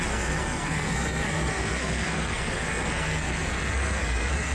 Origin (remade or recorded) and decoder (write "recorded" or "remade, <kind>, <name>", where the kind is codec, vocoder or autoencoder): remade, codec, SNAC